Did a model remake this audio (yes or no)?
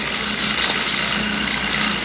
no